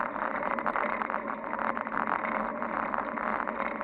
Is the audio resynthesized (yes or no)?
no